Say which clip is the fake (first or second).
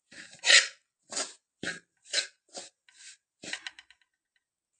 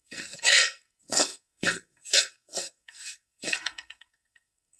second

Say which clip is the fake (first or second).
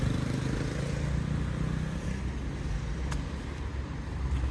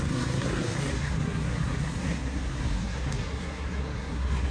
second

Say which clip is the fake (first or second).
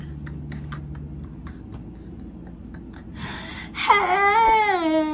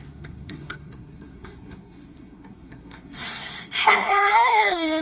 second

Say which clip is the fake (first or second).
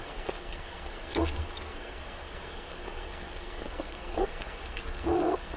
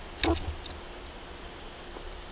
first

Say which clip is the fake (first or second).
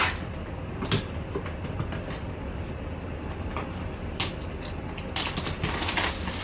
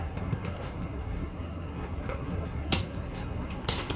second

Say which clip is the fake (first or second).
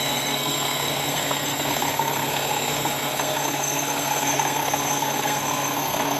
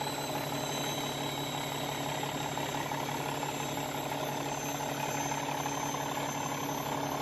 first